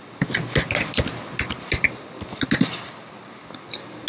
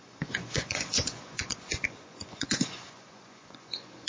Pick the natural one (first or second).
first